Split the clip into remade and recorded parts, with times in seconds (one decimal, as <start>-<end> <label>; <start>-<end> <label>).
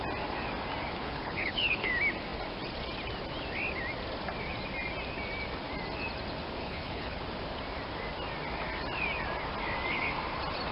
0.0-1.0 recorded; 1.0-1.9 remade; 1.9-6.6 recorded; 6.6-7.2 remade; 7.2-10.7 recorded